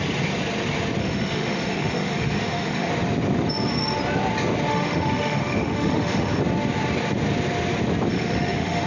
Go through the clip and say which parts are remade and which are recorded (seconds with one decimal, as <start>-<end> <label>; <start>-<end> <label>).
0.0-1.0 recorded; 1.0-2.9 remade; 2.9-4.7 recorded; 4.7-6.4 remade; 6.4-8.1 recorded; 8.1-8.9 remade